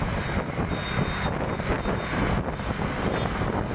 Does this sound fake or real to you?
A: real